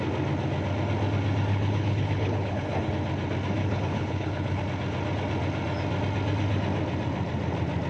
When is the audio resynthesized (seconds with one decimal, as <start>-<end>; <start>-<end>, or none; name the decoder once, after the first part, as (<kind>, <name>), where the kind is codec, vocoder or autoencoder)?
1.5-2.9 (codec, HILCodec); 3.6-4.6